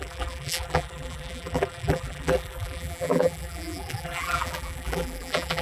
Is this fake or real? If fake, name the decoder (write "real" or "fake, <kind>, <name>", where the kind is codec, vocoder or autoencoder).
fake, vocoder, BigVGAN v2